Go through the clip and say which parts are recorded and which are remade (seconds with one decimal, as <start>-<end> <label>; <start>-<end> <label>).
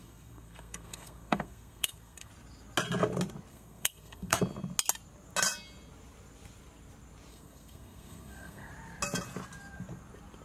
0.0-2.3 remade; 2.3-3.5 recorded; 3.5-4.4 remade; 4.4-7.3 recorded; 7.3-8.7 remade; 8.7-10.4 recorded